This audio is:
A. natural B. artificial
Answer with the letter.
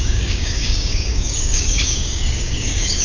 B